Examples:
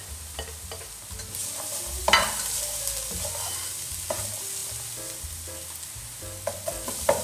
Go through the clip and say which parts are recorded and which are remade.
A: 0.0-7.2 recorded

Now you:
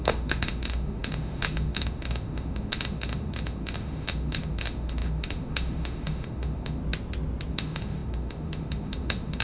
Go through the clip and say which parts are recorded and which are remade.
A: 0.0-6.8 remade; 6.8-7.5 recorded; 7.5-9.4 remade

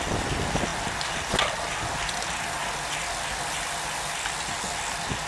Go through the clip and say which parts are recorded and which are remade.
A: 0.0-5.3 recorded

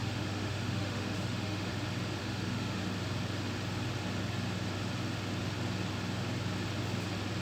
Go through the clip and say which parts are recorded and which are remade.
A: 0.0-1.7 remade; 1.7-2.2 recorded; 2.2-2.8 remade; 2.8-7.4 recorded

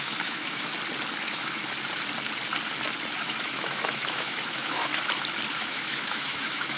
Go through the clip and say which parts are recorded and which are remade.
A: 0.0-0.7 remade; 0.7-1.2 recorded; 1.2-1.6 remade; 1.6-3.2 recorded; 3.2-4.9 remade; 4.9-5.5 recorded; 5.5-6.8 remade

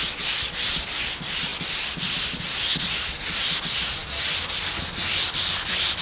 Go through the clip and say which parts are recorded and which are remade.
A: 0.0-6.0 recorded

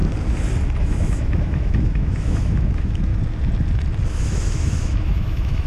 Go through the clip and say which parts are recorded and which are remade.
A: 0.0-0.8 recorded; 0.8-3.1 remade; 3.1-4.2 recorded; 4.2-5.7 remade

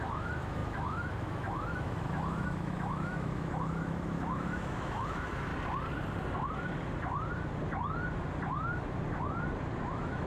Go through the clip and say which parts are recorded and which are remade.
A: 0.0-5.5 remade; 5.5-9.8 recorded; 9.8-10.3 remade